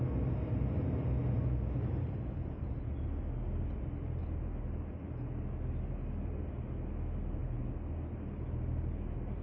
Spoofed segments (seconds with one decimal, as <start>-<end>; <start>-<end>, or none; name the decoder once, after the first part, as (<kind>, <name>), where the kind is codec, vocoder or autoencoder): none